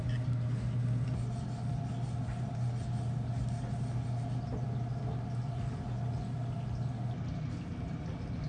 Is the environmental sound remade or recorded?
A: recorded